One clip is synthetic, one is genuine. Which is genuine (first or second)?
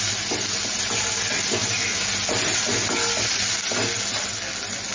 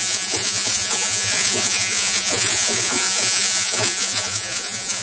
first